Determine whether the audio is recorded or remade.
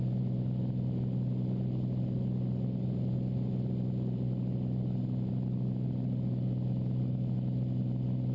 recorded